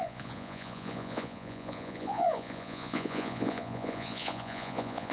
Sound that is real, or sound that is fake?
fake